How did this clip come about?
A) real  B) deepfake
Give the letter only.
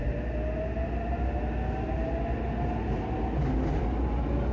A